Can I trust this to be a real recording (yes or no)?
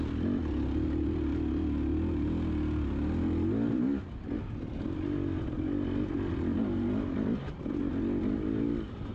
yes